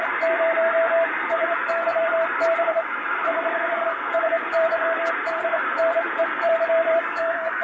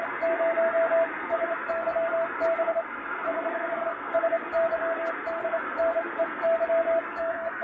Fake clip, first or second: first